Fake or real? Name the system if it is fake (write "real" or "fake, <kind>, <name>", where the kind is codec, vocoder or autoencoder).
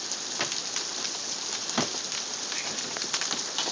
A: real